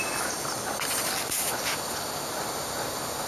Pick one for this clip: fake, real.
real